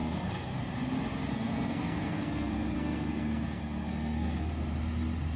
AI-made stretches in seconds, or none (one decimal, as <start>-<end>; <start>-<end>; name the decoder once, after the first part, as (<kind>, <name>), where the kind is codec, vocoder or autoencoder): 0.0-0.6 (codec, SNAC); 1.3-4.5